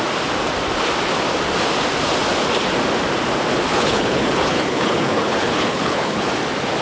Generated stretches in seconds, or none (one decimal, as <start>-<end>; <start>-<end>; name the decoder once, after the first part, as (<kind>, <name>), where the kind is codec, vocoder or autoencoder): 3.7-6.3 (codec, HILCodec)